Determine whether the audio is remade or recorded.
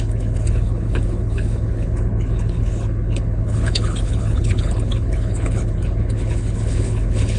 remade